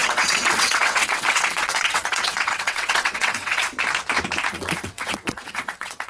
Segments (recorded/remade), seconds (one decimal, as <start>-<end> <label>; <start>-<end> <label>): 0.0-3.7 remade; 3.7-4.5 recorded; 4.5-6.1 remade